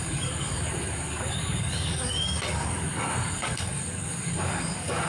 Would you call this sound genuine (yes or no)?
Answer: no